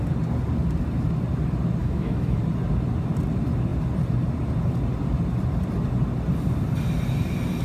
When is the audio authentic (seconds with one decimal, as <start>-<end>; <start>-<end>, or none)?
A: 0.0-1.8; 2.4-7.6